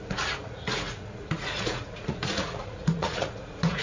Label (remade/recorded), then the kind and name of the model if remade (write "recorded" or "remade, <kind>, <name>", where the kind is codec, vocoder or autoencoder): remade, vocoder, Vocos